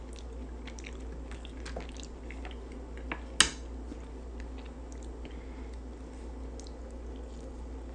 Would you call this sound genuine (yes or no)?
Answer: yes